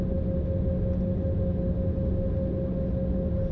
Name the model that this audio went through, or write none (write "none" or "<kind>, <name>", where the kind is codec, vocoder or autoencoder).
none